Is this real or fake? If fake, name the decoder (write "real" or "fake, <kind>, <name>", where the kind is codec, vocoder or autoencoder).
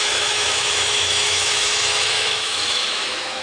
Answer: fake, autoencoder, DAC-VAE